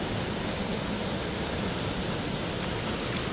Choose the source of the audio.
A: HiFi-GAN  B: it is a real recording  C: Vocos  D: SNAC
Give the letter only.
B